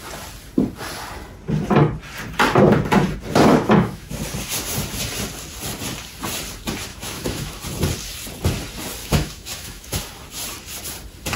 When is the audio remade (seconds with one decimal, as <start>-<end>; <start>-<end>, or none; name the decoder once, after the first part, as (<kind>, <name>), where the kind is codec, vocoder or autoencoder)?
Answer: 3.5-4.1 (autoencoder, DAC-VAE); 6.9-7.6; 9.0-10.0